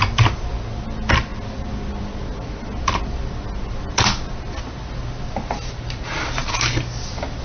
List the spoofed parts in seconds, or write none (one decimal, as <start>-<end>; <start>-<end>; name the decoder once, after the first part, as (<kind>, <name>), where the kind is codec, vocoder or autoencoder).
none